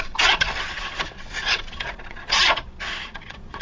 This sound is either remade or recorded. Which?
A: remade